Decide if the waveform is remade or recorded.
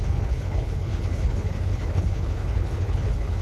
remade